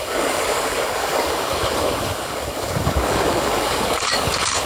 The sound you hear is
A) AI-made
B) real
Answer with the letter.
A